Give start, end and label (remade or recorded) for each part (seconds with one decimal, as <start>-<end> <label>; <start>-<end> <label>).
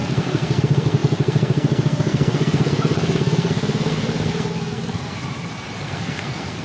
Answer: 0.0-5.2 remade; 5.2-5.8 recorded; 5.8-6.6 remade